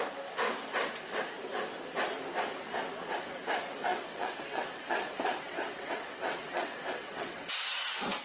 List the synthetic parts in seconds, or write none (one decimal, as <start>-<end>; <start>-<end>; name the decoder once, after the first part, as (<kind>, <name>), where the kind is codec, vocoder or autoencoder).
3.9-7.6 (vocoder, WaveNeXt)